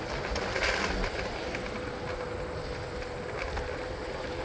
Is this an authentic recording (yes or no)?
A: yes